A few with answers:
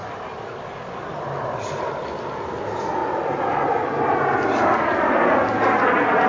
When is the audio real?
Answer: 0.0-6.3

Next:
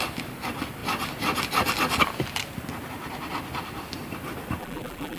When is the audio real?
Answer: 0.0-4.6

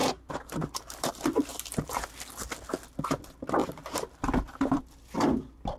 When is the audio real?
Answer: 1.1-1.5; 2.1-3.6; 4.8-5.8

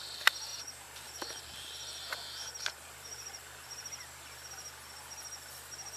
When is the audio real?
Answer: 0.0-0.5; 1.4-2.5; 4.0-6.0

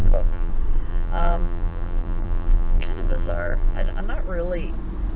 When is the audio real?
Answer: 0.5-0.9; 4.0-5.2

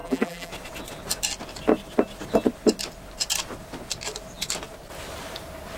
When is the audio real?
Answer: 0.5-5.8

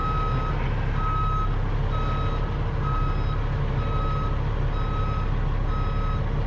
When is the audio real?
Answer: 0.0-6.5